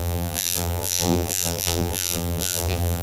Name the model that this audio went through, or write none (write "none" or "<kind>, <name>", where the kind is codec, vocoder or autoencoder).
vocoder, BigVGAN v2